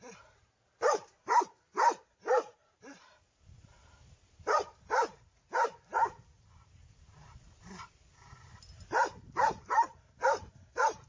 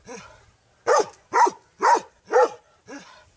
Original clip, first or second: second